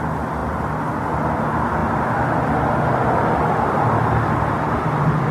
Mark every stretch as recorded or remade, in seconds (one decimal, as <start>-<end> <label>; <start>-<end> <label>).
0.0-0.4 recorded; 0.4-1.3 remade; 1.3-1.8 recorded; 1.8-5.3 remade